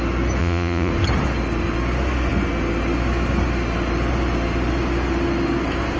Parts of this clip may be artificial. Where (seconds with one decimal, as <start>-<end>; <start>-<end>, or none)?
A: 0.4-0.9